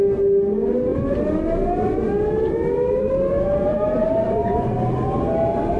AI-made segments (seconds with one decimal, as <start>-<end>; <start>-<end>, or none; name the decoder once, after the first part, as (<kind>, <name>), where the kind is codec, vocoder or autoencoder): 3.7-5.2 (vocoder, BigVGAN v2)